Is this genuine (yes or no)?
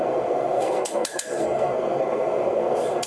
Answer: no